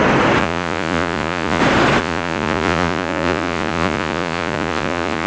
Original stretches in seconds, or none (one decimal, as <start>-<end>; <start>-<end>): 0.0-0.4; 1.6-2.0